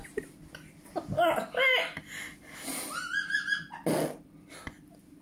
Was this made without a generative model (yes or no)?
yes